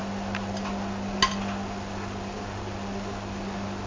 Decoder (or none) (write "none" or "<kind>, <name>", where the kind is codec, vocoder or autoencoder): none